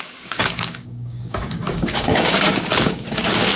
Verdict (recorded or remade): remade